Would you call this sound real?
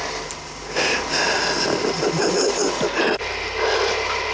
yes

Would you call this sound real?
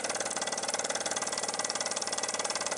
no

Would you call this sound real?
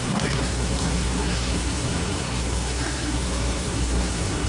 no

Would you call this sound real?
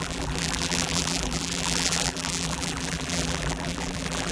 no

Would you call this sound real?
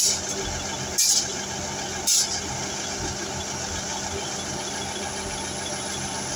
yes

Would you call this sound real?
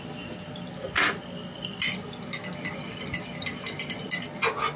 yes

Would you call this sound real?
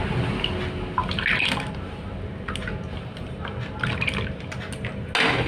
yes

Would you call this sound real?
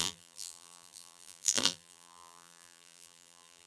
no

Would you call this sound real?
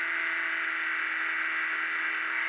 yes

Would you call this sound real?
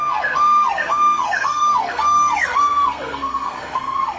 no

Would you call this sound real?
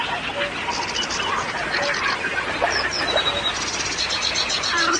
yes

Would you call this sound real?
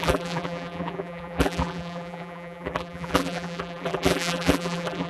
no